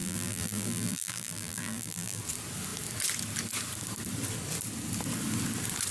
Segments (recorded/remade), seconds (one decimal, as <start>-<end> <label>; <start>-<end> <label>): 0.0-2.2 remade; 2.2-5.9 recorded